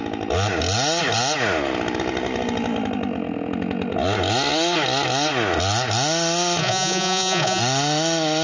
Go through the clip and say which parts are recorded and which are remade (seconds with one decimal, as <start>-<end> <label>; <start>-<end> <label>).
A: 0.0-6.6 recorded; 6.6-7.6 remade; 7.6-8.4 recorded